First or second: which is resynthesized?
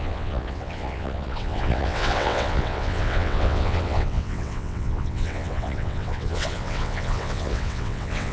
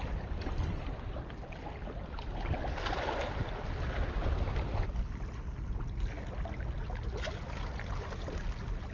first